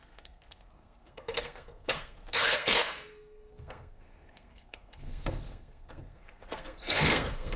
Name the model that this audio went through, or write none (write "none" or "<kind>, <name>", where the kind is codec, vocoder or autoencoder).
codec, SNAC